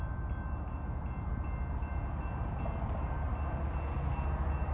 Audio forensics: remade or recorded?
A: recorded